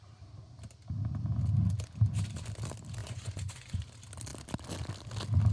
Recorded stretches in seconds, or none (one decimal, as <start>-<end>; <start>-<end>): 0.0-3.0; 3.8-5.5